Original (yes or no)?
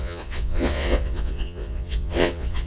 no